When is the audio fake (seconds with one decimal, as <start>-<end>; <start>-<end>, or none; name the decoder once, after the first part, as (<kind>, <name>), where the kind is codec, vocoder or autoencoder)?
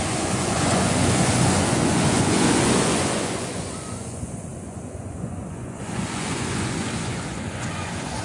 0.0-8.2 (vocoder, Vocos)